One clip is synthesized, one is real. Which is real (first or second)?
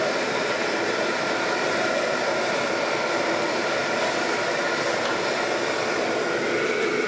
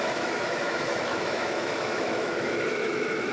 first